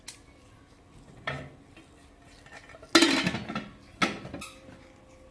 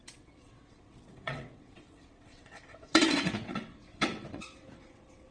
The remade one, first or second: second